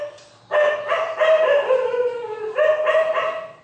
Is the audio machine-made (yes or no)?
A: no